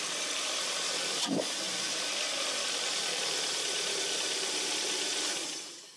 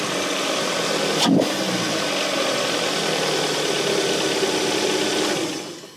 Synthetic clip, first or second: first